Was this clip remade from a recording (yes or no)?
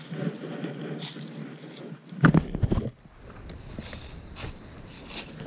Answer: no